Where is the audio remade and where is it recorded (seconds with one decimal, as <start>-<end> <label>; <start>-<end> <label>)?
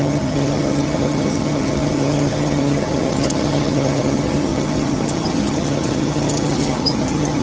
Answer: 0.0-7.4 remade